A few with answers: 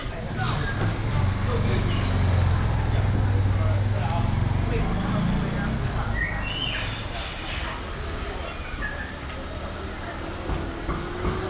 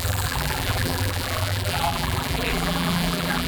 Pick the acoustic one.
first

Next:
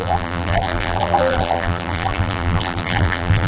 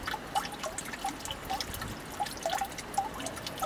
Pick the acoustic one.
second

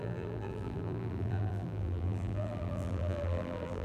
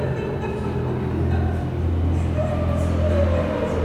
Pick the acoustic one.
second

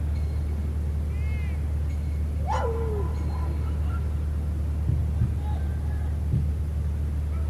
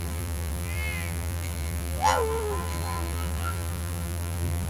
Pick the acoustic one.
first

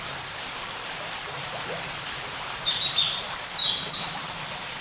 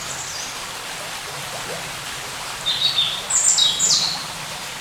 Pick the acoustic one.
second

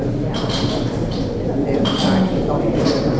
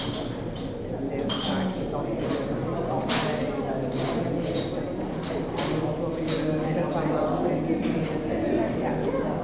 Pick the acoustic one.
second